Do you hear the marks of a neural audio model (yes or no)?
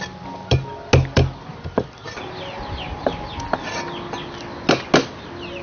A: no